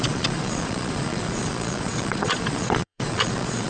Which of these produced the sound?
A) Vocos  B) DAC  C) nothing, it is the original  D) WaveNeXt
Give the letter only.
A